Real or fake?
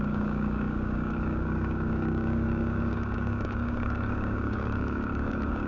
fake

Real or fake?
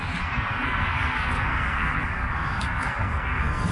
fake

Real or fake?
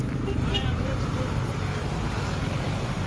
real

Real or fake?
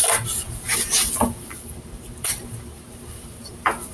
fake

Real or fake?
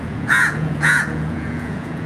fake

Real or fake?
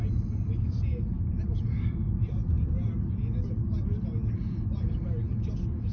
real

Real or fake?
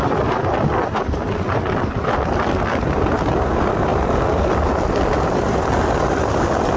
real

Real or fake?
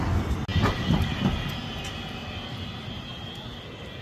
real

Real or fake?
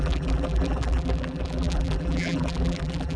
fake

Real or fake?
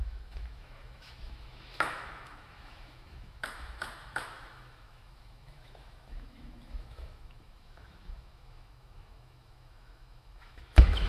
fake